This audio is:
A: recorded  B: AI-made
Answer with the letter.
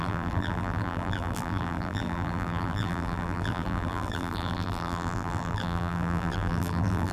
B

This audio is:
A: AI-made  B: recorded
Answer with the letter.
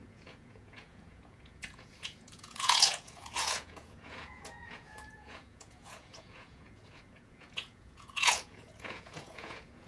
A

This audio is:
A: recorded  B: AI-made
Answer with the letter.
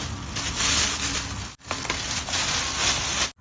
A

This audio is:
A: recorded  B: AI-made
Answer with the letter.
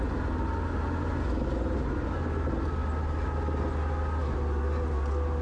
A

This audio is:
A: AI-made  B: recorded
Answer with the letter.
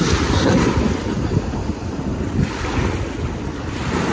B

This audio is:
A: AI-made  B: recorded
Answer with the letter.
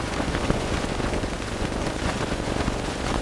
A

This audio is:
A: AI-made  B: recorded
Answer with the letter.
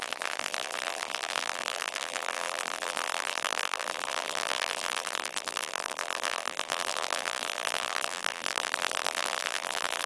A